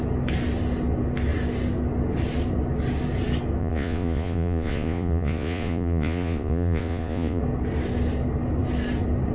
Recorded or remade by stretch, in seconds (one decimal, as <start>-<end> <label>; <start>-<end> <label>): 0.0-3.6 recorded; 3.6-7.4 remade; 7.4-9.3 recorded